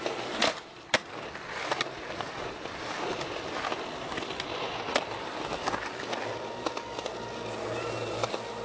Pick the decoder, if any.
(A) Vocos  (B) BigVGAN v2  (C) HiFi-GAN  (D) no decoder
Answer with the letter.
D